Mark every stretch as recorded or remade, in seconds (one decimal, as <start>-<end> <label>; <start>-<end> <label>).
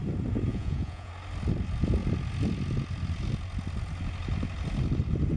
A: 0.0-0.5 recorded; 0.5-1.1 remade; 1.1-5.4 recorded